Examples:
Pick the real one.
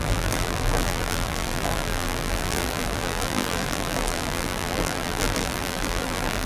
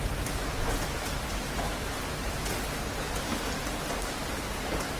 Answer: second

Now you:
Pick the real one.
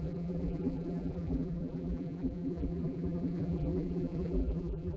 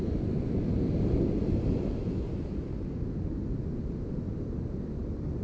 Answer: second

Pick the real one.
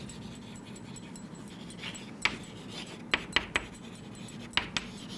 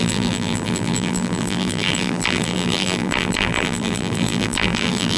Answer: first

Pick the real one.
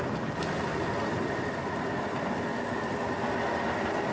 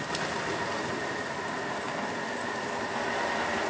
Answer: second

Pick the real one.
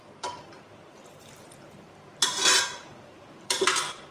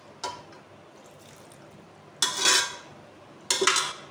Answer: second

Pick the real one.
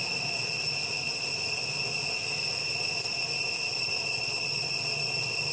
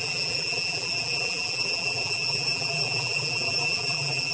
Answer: first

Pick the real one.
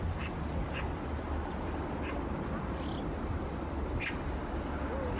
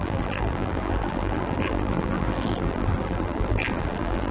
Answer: first